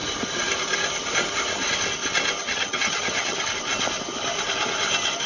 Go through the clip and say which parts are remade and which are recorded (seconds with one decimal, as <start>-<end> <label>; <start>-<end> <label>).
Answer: 0.0-2.4 recorded; 2.4-3.5 remade; 3.5-5.3 recorded